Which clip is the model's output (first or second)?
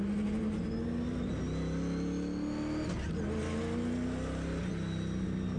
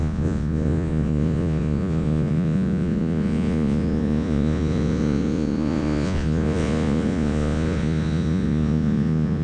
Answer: second